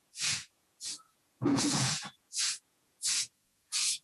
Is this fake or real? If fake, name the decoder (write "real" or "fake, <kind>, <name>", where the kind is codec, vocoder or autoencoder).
fake, vocoder, Vocos